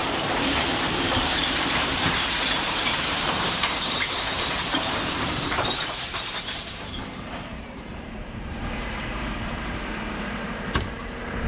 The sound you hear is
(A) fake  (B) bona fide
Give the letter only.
A